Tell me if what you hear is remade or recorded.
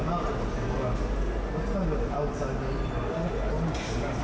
recorded